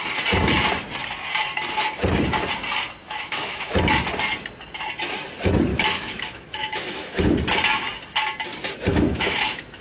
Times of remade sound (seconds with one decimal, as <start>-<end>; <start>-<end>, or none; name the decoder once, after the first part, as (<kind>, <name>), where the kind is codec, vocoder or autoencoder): 3.0-3.9 (autoencoder, DAC-VAE); 5.7-7.2; 8.9-9.8